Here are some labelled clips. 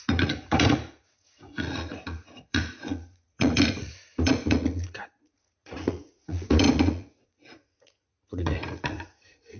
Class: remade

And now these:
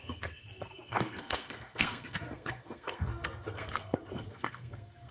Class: remade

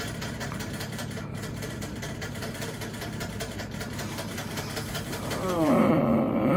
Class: remade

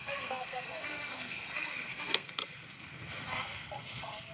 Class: remade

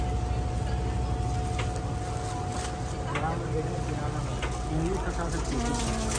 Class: recorded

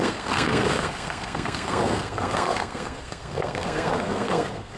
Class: remade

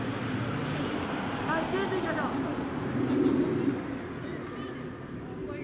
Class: recorded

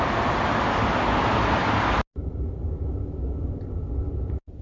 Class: recorded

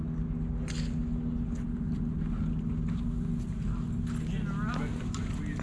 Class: recorded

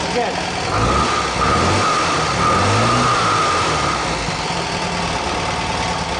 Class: recorded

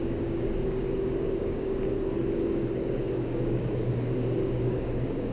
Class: remade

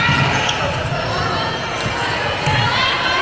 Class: remade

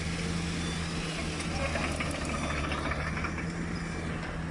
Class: recorded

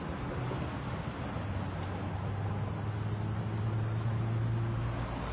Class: recorded